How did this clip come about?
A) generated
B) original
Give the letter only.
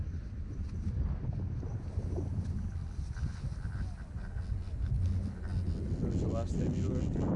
B